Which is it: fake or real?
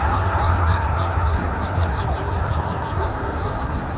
fake